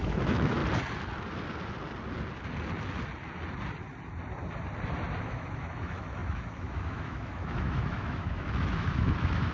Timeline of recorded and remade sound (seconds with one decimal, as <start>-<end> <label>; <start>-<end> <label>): 0.0-0.6 remade; 0.6-5.2 recorded; 5.2-9.5 remade